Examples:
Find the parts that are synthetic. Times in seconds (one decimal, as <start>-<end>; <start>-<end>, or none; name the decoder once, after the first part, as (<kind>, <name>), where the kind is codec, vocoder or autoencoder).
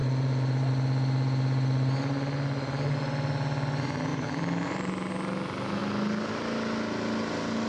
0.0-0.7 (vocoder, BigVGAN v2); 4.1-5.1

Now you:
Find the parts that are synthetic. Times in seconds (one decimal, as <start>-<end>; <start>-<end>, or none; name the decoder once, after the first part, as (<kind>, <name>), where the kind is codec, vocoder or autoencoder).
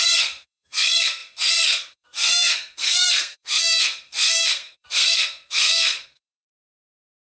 0.0-7.3 (codec, SNAC)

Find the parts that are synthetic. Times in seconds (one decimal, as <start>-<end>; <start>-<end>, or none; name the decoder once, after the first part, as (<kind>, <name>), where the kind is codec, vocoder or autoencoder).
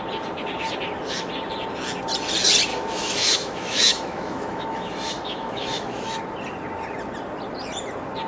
2.7-6.2 (autoencoder, DAC-VAE)